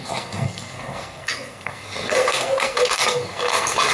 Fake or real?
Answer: fake